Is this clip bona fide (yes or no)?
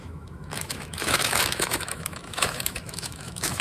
no